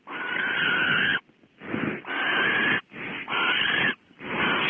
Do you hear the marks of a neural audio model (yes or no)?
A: no